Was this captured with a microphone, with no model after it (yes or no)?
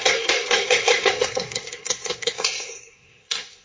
no